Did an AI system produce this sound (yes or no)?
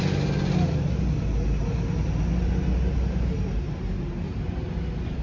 no